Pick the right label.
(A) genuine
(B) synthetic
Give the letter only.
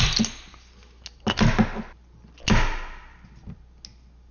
A